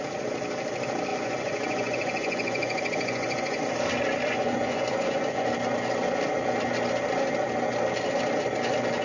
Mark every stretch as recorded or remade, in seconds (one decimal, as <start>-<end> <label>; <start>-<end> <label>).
0.0-1.1 recorded; 1.1-3.6 remade; 3.6-4.3 recorded; 4.3-5.5 remade; 5.5-9.0 recorded